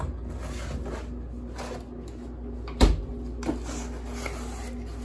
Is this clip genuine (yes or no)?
yes